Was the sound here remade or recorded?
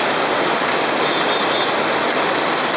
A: recorded